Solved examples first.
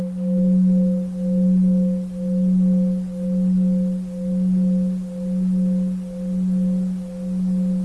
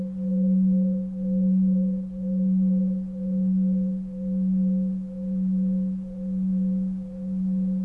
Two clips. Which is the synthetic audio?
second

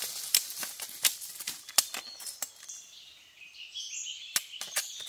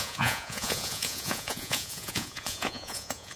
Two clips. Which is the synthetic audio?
second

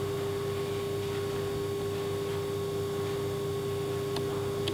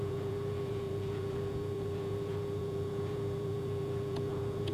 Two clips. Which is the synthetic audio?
second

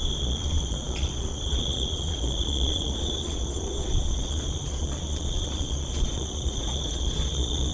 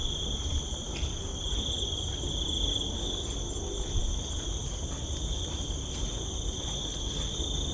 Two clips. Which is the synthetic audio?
first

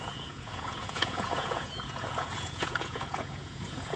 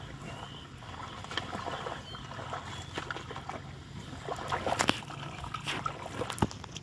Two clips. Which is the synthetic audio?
first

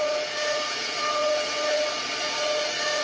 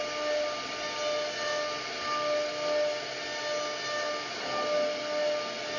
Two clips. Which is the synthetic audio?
first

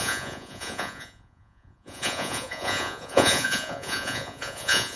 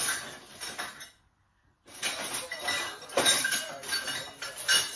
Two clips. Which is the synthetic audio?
first